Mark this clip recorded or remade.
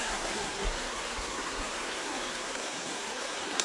remade